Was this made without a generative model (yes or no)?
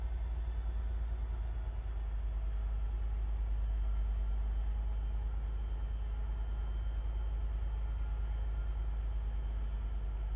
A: yes